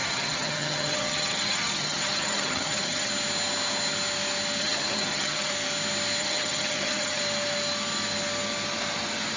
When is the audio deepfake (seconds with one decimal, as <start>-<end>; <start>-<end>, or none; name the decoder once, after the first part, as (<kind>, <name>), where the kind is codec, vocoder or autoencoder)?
0.0-3.1 (vocoder, HiFi-GAN); 4.6-5.5; 6.2-7.2